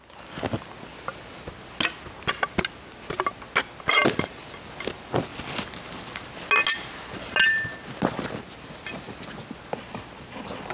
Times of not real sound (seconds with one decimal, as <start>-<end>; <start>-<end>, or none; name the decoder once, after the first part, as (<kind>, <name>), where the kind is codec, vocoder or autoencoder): none